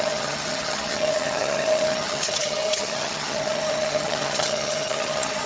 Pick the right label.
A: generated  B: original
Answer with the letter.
A